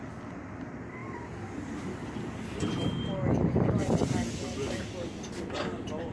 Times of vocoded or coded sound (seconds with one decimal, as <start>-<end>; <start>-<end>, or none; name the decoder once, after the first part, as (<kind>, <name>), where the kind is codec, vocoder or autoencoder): 1.0-4.7 (vocoder, BigVGAN v2)